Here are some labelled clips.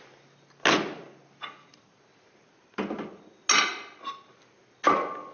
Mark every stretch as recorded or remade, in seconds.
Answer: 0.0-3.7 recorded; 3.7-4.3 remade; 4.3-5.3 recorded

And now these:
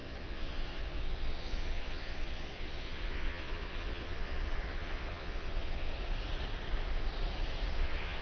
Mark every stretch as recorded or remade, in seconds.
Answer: 0.0-5.9 remade; 5.9-7.7 recorded; 7.7-8.2 remade

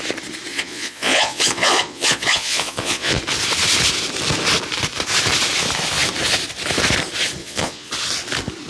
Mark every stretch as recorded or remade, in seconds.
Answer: 0.0-0.5 recorded; 0.5-3.2 remade; 3.2-7.4 recorded; 7.4-7.9 remade; 7.9-8.7 recorded

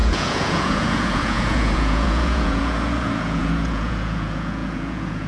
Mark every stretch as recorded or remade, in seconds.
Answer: 0.0-5.3 remade

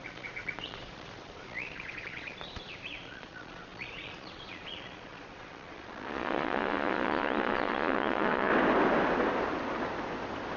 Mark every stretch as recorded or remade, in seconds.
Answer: 0.0-8.5 remade; 8.5-10.6 recorded

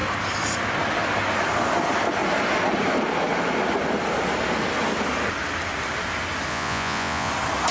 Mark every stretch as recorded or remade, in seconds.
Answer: 0.0-6.5 recorded; 6.5-7.3 remade; 7.3-7.7 recorded